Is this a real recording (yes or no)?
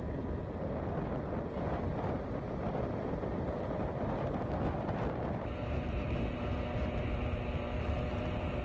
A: yes